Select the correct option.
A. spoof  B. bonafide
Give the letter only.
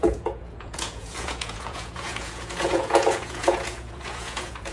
A